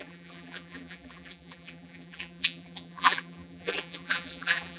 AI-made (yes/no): yes